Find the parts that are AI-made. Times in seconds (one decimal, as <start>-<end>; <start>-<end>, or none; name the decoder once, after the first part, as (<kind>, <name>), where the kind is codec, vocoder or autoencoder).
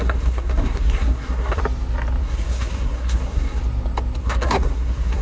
0.0-1.6 (codec, SNAC); 2.2-3.6; 4.2-5.2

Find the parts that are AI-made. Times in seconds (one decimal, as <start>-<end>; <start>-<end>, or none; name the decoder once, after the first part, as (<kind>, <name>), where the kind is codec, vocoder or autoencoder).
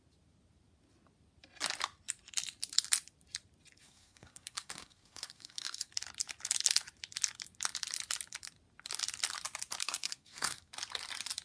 3.8-5.9 (codec, SNAC); 9.8-10.7